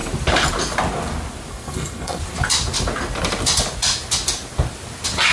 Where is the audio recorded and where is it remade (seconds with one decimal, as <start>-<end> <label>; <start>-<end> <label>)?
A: 0.0-1.5 recorded; 1.5-2.2 remade; 2.2-5.3 recorded